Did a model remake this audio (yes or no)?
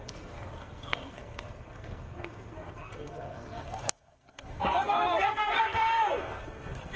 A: yes